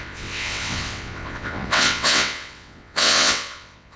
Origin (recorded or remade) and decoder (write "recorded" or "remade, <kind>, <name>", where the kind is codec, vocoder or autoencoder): remade, vocoder, WaveNeXt